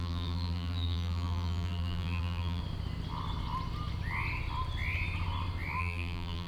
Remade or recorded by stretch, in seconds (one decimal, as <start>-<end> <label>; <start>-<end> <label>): 0.0-2.6 remade; 2.6-5.8 recorded; 5.8-6.5 remade